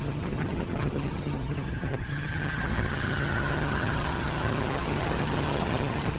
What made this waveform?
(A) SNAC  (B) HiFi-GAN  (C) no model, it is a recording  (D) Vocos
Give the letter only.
B